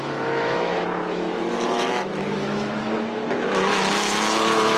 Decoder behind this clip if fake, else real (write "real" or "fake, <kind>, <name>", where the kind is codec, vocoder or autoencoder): fake, autoencoder, DAC-VAE